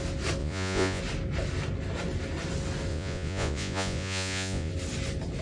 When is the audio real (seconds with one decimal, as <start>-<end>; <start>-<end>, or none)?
0.0-0.4; 1.0-2.9; 4.7-5.4